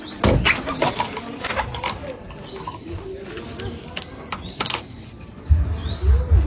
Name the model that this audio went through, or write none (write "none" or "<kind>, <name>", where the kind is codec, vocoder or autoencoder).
none